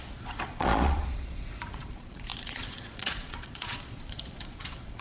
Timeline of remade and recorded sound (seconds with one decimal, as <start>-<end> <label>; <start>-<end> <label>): 0.0-5.0 remade